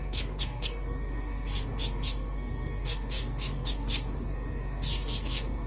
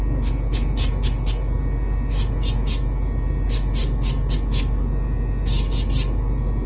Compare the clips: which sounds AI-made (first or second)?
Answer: first